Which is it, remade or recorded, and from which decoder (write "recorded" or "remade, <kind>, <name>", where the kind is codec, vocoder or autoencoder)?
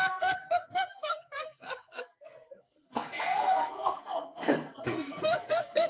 remade, codec, SNAC